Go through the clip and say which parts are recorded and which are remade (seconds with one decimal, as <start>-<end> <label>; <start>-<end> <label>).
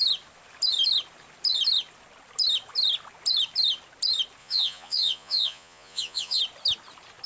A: 0.0-4.4 recorded; 4.4-6.4 remade; 6.4-7.3 recorded